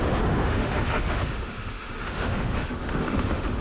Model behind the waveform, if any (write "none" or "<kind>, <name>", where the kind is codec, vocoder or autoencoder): autoencoder, DAC-VAE